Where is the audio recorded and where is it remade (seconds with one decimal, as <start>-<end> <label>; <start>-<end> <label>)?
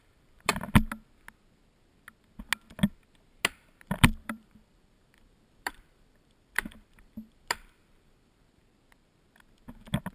0.0-0.5 remade; 0.5-3.8 recorded; 3.8-8.6 remade; 8.6-10.1 recorded